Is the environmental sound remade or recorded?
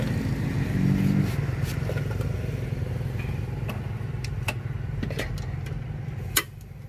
recorded